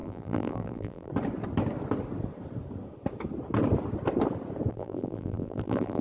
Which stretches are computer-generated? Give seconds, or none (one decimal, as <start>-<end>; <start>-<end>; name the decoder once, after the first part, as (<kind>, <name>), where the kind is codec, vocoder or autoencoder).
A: 0.0-1.1 (vocoder, BigVGAN v2); 4.7-6.0